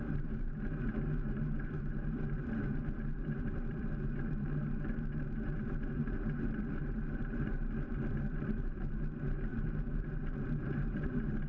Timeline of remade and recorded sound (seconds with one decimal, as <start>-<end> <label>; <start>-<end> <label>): 0.0-11.5 remade